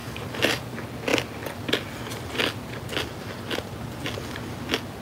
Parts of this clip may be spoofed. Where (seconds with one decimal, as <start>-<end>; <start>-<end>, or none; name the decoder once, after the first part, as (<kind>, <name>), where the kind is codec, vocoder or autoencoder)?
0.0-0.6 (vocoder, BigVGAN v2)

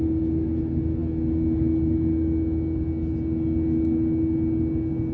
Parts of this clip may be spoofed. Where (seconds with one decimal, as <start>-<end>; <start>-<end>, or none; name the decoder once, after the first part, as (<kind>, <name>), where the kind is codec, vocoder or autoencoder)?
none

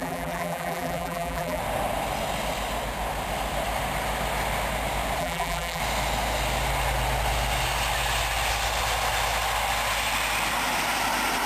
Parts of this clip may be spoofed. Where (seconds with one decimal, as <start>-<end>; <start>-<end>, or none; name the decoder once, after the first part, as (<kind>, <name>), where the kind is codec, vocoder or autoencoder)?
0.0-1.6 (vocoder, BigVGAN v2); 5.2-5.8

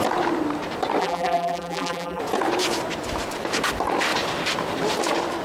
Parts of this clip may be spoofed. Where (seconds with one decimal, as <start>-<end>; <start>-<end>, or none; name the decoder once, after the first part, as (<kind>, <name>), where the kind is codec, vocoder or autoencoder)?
1.0-2.2 (vocoder, BigVGAN v2)

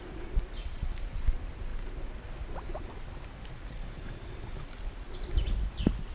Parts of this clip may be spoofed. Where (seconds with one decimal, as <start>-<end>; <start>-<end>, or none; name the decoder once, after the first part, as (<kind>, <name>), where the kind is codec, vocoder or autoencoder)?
0.0-6.1 (vocoder, BigVGAN v2)

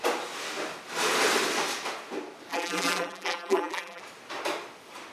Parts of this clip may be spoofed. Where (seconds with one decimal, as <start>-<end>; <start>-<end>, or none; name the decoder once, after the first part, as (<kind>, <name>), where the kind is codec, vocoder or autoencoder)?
2.5-4.0 (vocoder, BigVGAN v2)

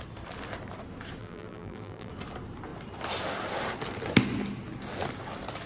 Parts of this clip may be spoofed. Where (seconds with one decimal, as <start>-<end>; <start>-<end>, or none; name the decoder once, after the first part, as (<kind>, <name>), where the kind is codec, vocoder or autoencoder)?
1.2-2.1 (vocoder, BigVGAN v2)

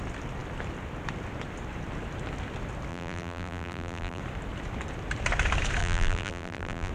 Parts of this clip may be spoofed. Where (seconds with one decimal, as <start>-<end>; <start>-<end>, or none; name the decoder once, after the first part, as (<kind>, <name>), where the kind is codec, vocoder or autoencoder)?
2.9-4.2 (vocoder, BigVGAN v2); 5.8-6.9